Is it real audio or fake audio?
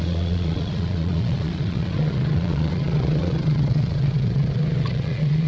fake